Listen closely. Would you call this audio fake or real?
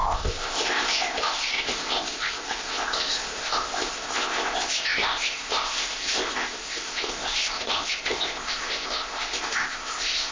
fake